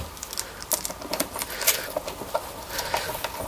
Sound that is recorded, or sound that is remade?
recorded